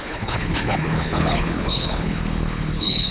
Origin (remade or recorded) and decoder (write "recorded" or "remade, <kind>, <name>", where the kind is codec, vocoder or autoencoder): remade, codec, HILCodec